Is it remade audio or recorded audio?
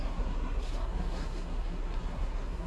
remade